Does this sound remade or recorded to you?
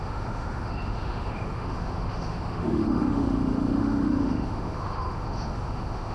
remade